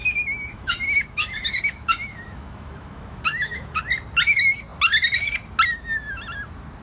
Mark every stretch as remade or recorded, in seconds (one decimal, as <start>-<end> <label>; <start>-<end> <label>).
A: 0.0-3.8 remade; 3.8-6.8 recorded